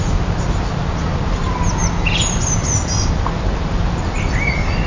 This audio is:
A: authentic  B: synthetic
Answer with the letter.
A